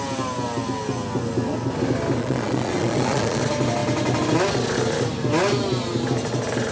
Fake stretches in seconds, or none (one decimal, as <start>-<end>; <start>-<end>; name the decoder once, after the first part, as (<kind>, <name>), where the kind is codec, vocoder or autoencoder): 2.2-3.4 (vocoder, Vocos)